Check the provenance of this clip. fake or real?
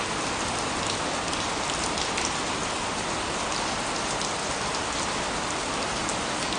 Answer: real